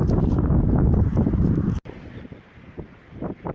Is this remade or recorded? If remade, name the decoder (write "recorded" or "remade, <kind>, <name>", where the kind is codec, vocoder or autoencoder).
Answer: remade, vocoder, BigVGAN v2